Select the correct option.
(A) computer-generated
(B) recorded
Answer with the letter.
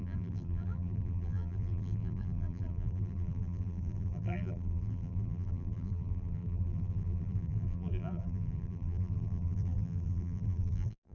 A